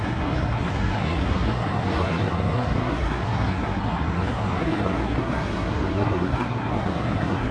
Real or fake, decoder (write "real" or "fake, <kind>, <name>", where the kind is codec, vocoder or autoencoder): fake, codec, SNAC